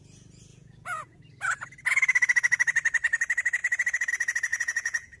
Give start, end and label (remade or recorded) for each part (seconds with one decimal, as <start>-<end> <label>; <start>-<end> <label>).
0.0-0.5 recorded; 0.5-1.2 remade; 1.2-4.5 recorded; 4.5-5.2 remade